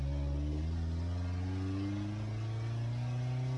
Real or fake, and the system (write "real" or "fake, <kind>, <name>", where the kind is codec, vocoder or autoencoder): real